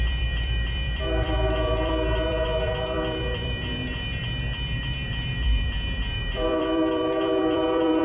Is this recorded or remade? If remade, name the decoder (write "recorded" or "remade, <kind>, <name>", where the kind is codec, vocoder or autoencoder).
remade, vocoder, BigVGAN v2